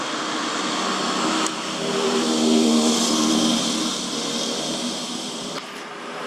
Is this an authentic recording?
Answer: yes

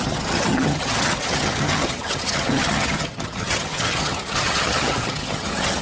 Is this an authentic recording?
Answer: no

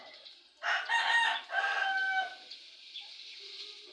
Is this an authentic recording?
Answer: yes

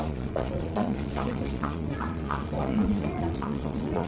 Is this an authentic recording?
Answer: no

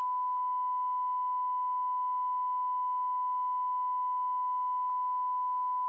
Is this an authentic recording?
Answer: yes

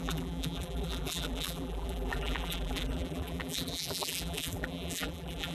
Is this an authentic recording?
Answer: no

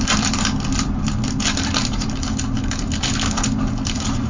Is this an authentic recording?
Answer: yes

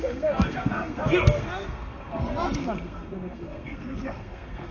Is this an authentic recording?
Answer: no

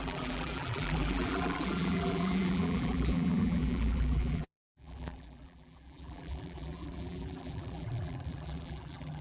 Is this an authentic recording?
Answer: no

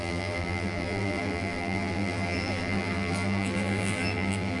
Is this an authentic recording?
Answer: no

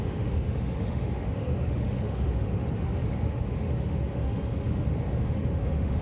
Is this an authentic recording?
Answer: no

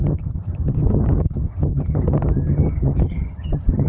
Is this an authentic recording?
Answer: no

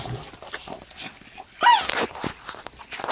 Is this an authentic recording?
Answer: yes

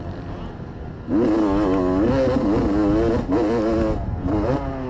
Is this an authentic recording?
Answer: yes